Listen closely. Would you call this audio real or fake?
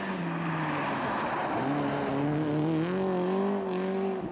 real